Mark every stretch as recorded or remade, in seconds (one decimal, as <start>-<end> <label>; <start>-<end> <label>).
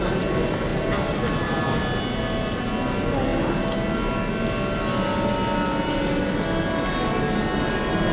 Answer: 0.0-8.1 recorded